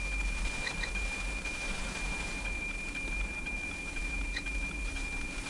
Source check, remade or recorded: remade